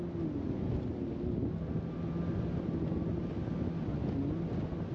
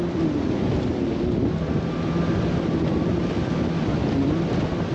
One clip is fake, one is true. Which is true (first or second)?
first